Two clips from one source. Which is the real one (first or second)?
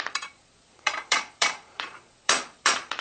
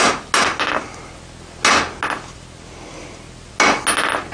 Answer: second